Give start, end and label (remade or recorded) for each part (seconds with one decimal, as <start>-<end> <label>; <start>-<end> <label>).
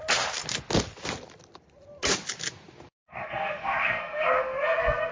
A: 0.0-3.1 recorded; 3.1-5.1 remade